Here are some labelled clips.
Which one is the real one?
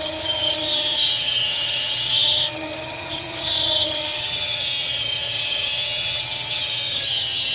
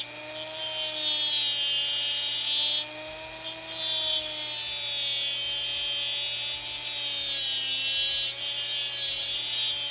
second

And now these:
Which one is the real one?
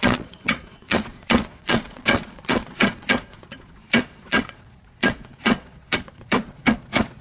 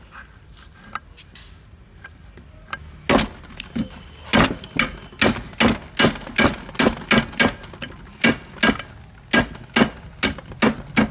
second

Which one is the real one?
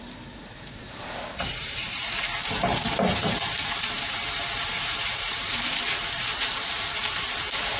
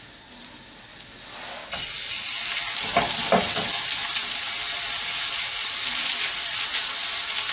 second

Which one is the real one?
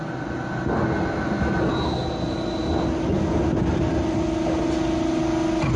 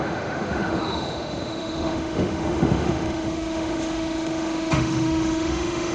first